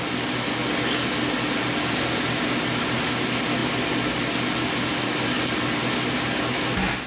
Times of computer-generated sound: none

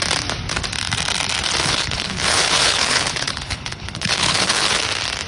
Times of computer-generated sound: 1.6-4.8 (codec, HILCodec)

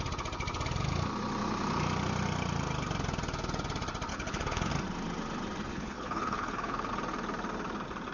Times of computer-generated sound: 4.1-4.7 (codec, HILCodec); 5.7-6.9